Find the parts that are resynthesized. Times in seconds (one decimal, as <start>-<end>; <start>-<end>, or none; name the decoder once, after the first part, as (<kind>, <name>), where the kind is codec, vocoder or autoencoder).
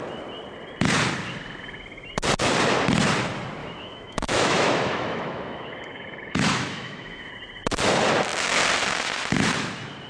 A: 3.6-7.3 (autoencoder, DAC-VAE)